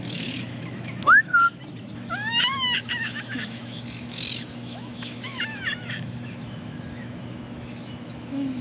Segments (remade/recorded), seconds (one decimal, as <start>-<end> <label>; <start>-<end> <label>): 0.0-1.3 remade; 1.3-1.8 recorded; 1.8-8.6 remade